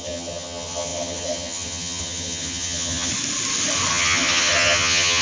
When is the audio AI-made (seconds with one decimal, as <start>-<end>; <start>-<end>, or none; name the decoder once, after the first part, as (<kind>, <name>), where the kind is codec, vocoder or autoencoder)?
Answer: 0.0-3.1 (vocoder, HiFi-GAN); 3.9-5.2